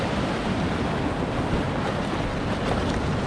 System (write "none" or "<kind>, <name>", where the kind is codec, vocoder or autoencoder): none